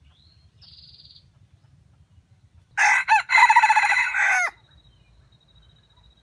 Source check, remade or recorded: recorded